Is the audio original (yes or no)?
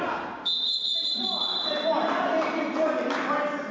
yes